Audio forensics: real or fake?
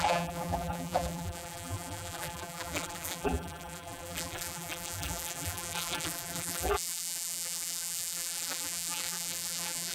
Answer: fake